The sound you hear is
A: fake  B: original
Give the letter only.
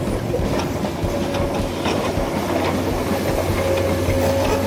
B